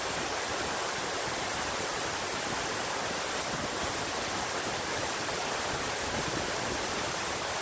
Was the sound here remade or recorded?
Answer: recorded